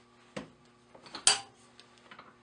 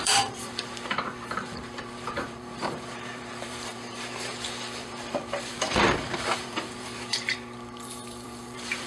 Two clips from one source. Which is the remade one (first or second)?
second